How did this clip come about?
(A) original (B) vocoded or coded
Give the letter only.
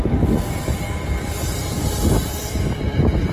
A